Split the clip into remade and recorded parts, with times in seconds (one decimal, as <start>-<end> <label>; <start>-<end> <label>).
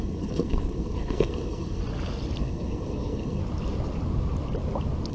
0.0-1.8 remade; 1.8-2.4 recorded; 2.4-3.4 remade; 3.4-5.1 recorded